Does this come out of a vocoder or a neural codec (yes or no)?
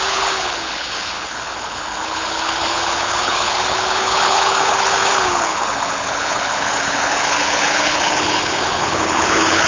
yes